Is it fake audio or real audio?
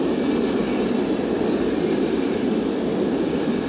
real